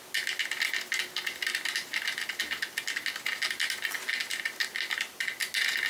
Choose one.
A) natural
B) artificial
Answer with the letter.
A